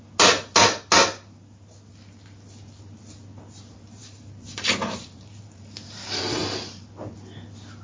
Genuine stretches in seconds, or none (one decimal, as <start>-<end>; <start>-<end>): 0.0-4.0; 6.9-7.8